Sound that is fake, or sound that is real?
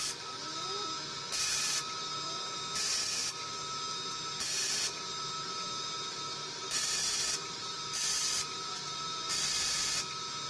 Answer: real